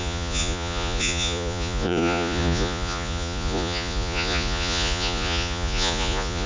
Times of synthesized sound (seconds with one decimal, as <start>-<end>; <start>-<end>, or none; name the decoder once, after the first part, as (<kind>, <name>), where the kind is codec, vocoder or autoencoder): 0.0-6.5 (vocoder, Vocos)